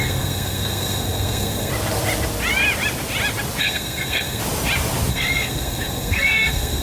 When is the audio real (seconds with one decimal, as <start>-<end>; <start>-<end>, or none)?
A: 1.7-3.6; 4.4-5.1